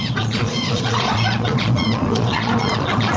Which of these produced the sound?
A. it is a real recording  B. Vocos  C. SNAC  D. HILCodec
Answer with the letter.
B